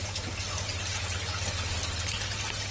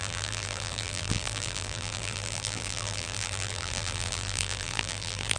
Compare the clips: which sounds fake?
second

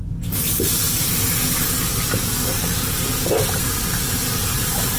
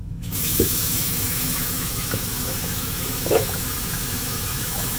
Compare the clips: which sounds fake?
second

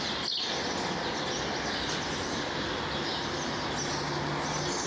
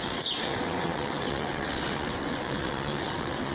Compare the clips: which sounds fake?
second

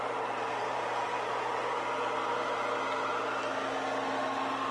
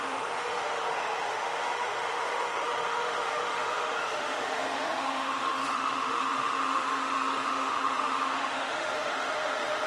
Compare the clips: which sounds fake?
second